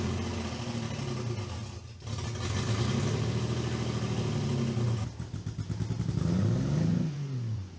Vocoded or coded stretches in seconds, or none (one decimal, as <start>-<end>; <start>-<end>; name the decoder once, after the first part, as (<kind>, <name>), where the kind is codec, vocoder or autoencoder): 6.9-7.8 (vocoder, Vocos)